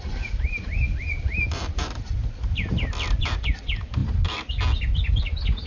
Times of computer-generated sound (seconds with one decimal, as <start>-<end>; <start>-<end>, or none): 0.0-2.2; 3.2-4.0